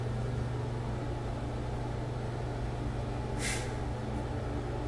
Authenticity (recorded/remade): recorded